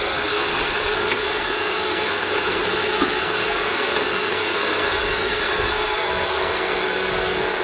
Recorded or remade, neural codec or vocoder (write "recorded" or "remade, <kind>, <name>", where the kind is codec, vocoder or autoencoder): remade, codec, SNAC